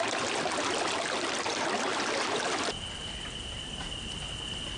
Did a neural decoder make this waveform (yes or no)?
no